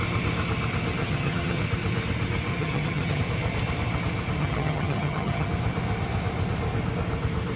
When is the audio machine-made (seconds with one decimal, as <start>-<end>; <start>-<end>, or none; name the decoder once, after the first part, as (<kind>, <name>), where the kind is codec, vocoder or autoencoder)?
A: 1.0-1.6 (vocoder, HiFi-GAN); 2.5-3.2; 4.4-5.5